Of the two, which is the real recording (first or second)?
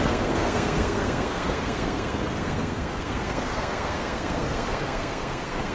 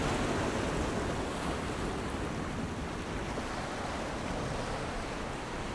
second